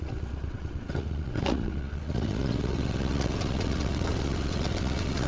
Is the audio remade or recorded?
remade